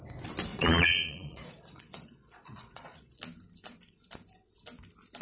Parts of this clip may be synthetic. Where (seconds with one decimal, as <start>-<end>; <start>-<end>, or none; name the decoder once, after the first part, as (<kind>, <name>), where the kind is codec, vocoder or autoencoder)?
0.5-3.2 (vocoder, Vocos)